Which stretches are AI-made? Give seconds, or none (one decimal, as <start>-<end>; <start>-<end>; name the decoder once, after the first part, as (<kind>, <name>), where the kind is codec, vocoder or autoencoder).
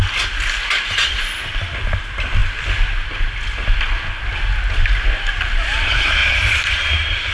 6.2-7.3 (vocoder, BigVGAN v2)